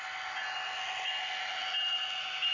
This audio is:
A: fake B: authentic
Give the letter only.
B